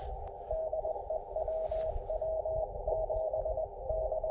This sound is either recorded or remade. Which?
recorded